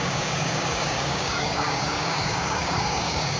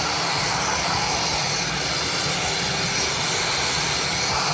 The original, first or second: second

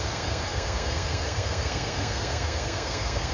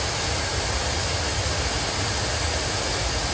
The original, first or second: second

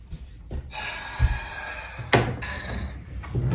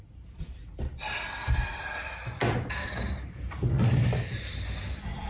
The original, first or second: first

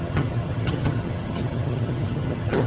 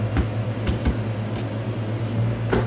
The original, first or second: second